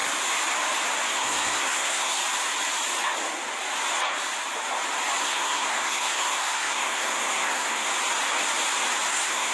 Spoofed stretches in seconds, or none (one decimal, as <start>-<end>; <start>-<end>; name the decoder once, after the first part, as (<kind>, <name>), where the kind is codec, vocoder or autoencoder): 1.1-2.2 (codec, SNAC); 5.2-7.9; 9.1-9.5

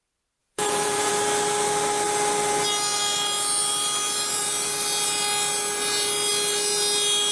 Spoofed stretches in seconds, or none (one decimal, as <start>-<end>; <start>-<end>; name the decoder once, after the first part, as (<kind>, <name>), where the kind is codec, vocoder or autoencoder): 0.4-1.1 (vocoder, Vocos)